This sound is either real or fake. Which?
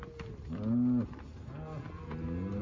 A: real